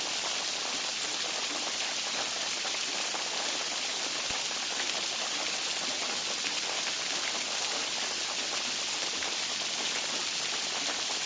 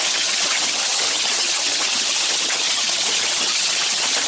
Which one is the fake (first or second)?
second